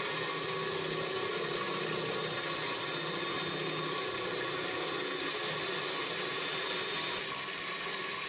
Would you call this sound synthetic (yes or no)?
no